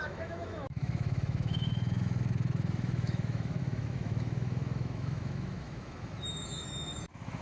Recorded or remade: remade